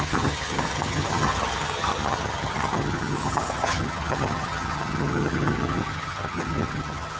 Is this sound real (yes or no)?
no